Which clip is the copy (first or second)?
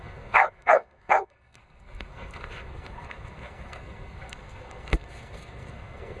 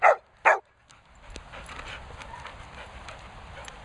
first